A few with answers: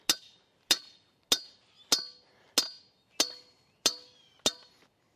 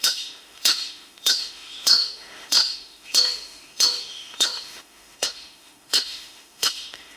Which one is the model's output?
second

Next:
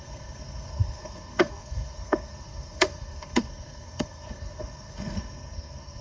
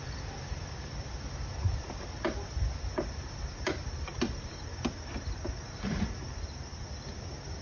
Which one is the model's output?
first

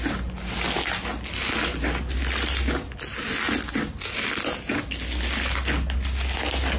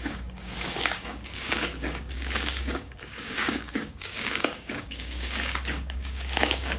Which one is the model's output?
second